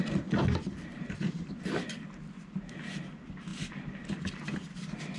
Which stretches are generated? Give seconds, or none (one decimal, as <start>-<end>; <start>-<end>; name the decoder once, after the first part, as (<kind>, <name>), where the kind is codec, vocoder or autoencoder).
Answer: 0.9-1.5 (vocoder, BigVGAN v2)

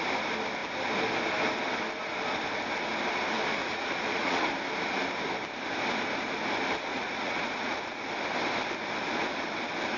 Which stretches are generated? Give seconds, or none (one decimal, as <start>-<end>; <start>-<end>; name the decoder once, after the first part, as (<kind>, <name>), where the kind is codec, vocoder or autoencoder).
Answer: 3.6-4.5 (vocoder, Vocos); 6.9-8.0

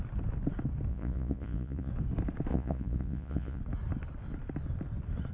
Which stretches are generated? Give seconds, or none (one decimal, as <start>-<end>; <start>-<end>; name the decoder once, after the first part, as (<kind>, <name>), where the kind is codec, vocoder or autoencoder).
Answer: 0.9-1.9 (vocoder, Vocos); 2.5-3.6

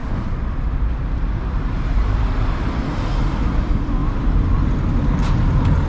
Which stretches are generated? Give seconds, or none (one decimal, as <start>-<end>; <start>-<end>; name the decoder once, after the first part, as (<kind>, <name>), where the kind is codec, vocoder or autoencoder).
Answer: 0.0-3.0 (vocoder, BigVGAN v2); 4.0-4.7

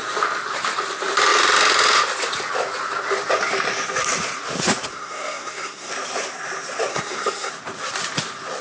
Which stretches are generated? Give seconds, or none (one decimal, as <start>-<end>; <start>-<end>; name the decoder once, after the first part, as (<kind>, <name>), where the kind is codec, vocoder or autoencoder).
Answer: 4.9-5.9 (codec, SNAC); 6.9-7.5

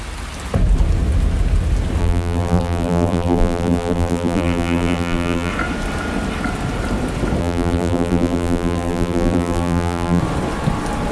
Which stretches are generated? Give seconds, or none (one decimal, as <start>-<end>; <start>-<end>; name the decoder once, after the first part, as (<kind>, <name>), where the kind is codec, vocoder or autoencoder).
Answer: 2.0-5.5 (vocoder, BigVGAN v2); 7.4-10.2

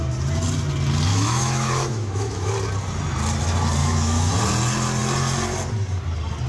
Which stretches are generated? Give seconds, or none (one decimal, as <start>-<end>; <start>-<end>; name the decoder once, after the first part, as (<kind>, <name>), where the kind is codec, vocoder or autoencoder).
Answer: 1.1-2.5 (autoencoder, DAC-VAE); 3.8-4.3